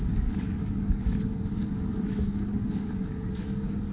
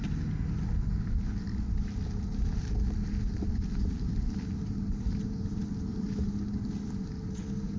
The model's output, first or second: first